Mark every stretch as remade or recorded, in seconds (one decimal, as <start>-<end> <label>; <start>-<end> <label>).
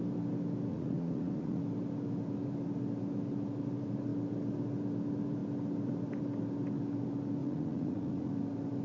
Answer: 0.0-0.7 recorded; 0.7-1.6 remade; 1.6-7.4 recorded; 7.4-8.3 remade; 8.3-8.8 recorded